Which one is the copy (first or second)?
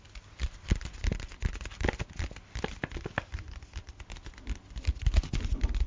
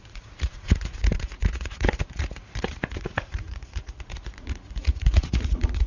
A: second